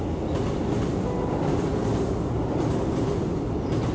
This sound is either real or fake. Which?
real